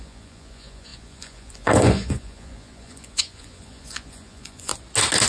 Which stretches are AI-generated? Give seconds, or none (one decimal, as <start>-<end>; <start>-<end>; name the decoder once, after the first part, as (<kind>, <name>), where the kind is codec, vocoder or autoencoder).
0.0-4.7 (vocoder, Vocos)